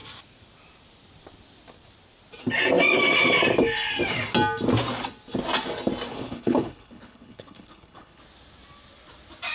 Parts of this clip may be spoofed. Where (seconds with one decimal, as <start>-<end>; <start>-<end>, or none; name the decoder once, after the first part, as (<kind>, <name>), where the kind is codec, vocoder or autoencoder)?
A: 6.1-8.2 (codec, HILCodec)